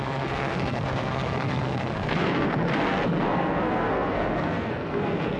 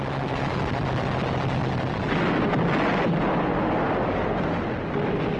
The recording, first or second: second